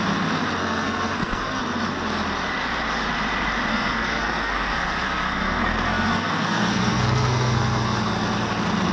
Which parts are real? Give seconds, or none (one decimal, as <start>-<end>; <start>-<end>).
0.0-0.6; 1.6-3.7; 8.1-8.9

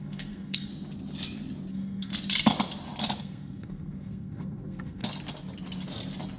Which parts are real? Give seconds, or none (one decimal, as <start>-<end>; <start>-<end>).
0.7-1.7; 2.1-3.2; 5.0-6.4

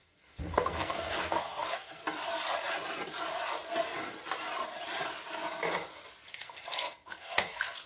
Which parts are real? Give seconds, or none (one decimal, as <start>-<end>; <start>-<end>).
2.0-6.3

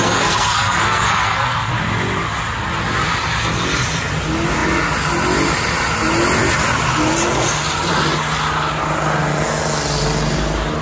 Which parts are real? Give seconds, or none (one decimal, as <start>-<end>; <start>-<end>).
1.7-10.8